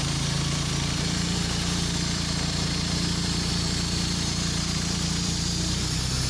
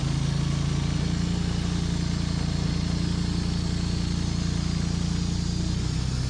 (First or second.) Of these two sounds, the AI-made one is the first